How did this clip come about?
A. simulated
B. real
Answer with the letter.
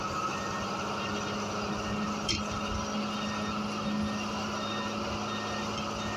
B